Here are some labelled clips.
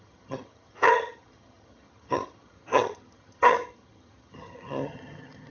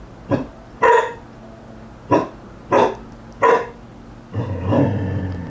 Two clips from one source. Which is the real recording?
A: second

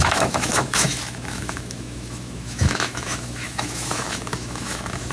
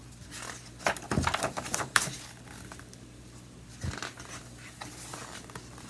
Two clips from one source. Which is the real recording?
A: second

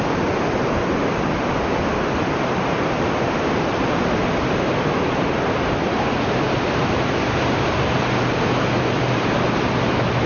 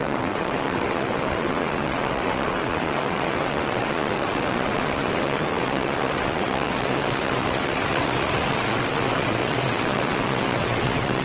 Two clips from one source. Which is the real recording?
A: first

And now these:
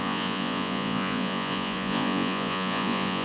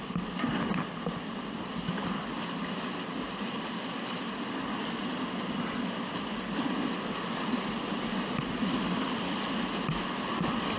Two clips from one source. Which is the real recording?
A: second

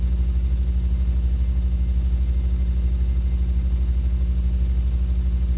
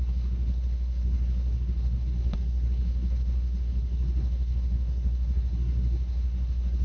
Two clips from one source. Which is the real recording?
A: first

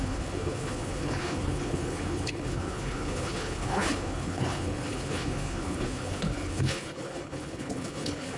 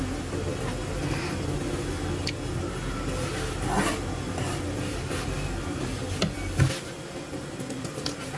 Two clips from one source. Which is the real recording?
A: second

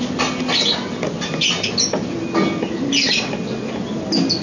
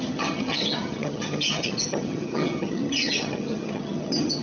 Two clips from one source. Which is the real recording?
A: first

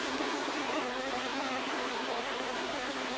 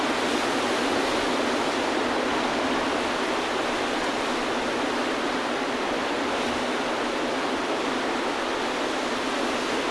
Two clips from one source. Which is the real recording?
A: second